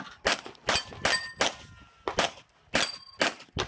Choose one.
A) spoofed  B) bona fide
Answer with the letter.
B